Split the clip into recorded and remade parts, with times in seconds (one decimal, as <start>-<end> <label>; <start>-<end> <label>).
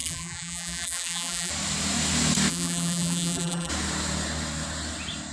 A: 0.0-1.5 remade; 1.5-2.5 recorded; 2.5-3.7 remade; 3.7-5.3 recorded